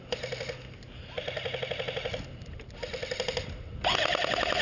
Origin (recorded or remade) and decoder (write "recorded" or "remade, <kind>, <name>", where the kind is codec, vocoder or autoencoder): recorded